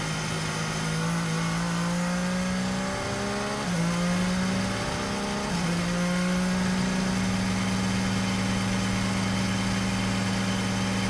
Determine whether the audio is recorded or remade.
recorded